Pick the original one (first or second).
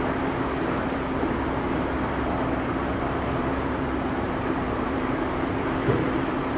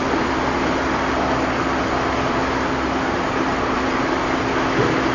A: second